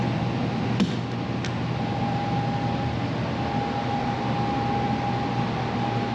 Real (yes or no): yes